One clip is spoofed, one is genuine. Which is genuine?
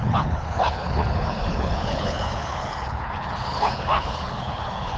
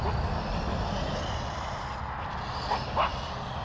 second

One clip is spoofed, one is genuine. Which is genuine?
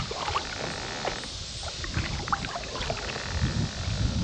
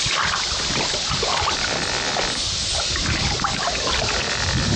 first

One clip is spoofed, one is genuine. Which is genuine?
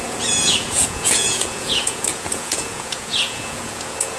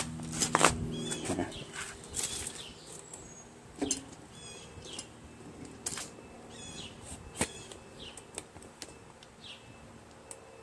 second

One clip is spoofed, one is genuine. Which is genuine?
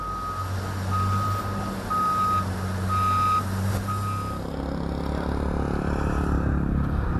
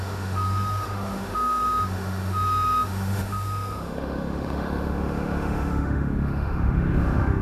first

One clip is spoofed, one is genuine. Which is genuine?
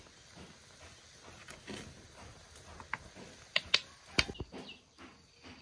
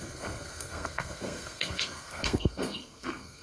first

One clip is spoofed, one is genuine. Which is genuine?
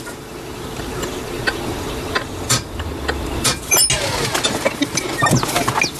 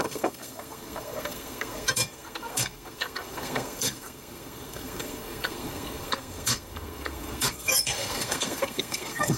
first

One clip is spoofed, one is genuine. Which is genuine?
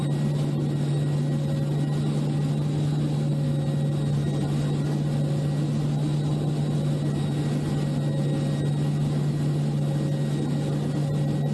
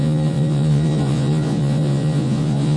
first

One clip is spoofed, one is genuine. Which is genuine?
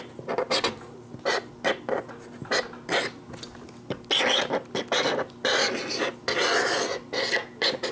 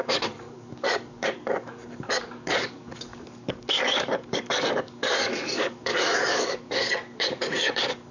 first